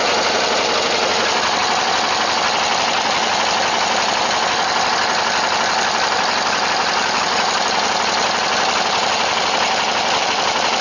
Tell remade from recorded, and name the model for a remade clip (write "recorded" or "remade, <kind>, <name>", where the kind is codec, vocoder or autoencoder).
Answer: recorded